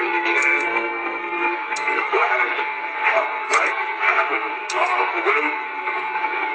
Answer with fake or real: fake